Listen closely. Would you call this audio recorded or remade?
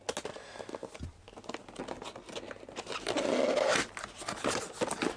recorded